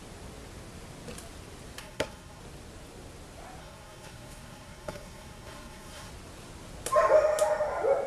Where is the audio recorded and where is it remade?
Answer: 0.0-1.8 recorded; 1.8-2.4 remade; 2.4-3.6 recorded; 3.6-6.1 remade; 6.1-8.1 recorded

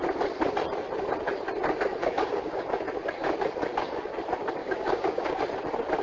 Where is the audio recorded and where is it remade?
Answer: 0.0-2.0 recorded; 2.0-2.8 remade; 2.8-4.6 recorded; 4.6-5.4 remade; 5.4-6.0 recorded

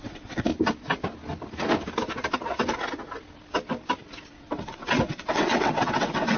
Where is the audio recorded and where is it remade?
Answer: 0.0-0.5 remade; 0.5-4.3 recorded; 4.3-6.4 remade

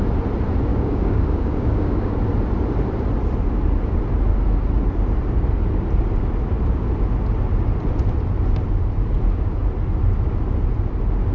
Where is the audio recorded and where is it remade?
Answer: 0.0-0.7 recorded; 0.7-2.2 remade; 2.2-11.3 recorded